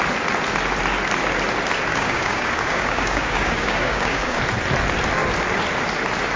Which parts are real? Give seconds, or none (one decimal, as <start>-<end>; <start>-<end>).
0.0-1.9; 4.4-6.4